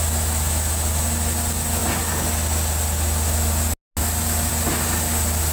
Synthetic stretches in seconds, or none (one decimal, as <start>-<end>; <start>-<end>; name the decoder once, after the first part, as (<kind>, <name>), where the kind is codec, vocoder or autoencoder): none